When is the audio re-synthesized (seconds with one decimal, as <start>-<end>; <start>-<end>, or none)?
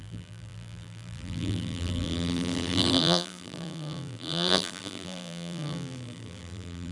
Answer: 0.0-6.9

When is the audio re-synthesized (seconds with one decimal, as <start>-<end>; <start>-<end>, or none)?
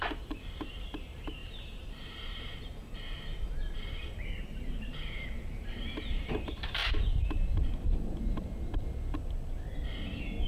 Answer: 0.0-6.8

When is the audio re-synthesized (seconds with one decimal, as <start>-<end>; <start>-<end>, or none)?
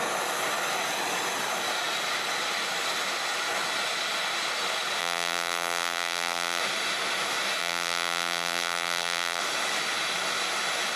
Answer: 5.0-6.6; 7.6-9.4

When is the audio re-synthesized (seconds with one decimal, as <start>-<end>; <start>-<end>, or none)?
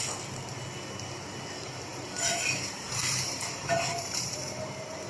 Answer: 1.9-5.1